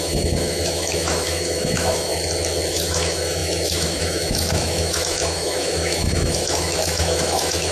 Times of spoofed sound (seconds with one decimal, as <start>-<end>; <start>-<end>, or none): 0.0-2.1; 2.7-7.7